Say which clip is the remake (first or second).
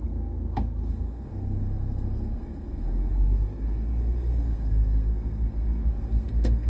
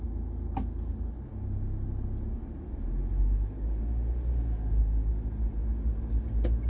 first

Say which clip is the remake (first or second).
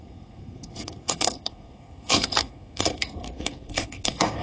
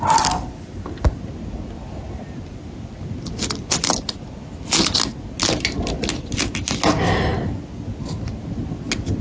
first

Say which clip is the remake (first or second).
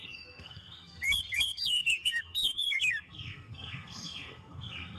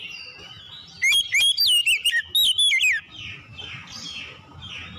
first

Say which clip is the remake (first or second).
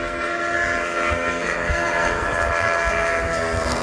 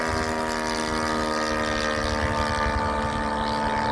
first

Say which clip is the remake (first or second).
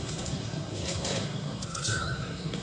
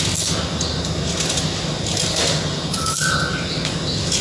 first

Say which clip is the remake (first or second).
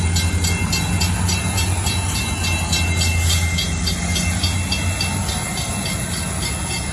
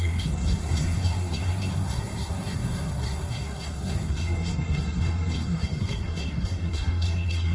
second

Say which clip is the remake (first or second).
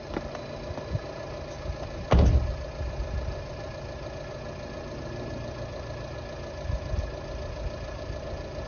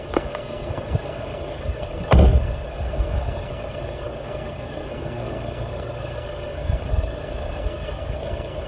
second